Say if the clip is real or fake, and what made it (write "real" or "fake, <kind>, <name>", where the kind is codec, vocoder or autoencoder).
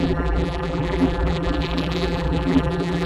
fake, vocoder, BigVGAN v2